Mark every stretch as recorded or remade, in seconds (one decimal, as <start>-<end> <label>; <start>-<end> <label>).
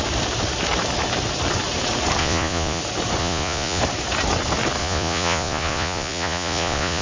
0.0-2.2 recorded; 2.2-2.8 remade; 2.8-3.2 recorded; 3.2-3.8 remade; 3.8-4.8 recorded; 4.8-7.0 remade